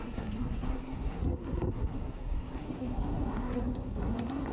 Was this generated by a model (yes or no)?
yes